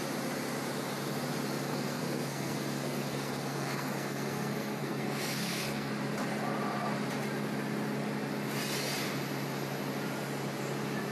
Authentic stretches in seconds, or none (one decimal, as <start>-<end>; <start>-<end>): 0.0-1.7; 5.9-11.1